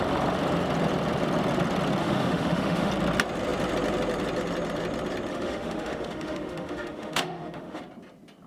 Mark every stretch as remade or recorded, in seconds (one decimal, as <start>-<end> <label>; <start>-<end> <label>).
0.0-2.0 recorded; 2.0-2.9 remade; 2.9-5.3 recorded; 5.3-7.8 remade; 7.8-8.5 recorded